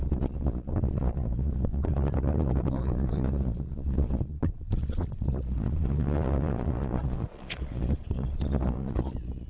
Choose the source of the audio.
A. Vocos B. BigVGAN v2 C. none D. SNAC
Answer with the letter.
A